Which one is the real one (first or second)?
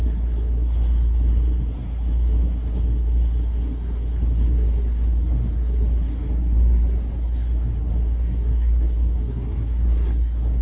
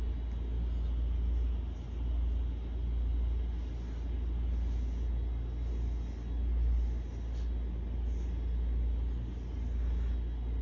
second